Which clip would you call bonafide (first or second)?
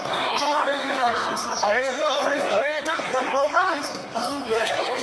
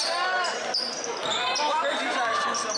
second